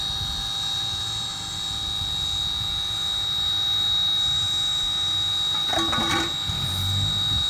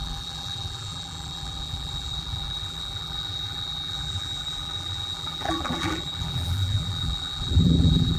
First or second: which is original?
first